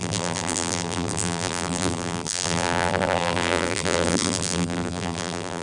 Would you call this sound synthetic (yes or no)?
yes